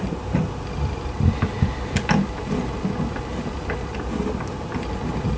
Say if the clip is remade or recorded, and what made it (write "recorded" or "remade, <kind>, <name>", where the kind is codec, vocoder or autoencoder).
recorded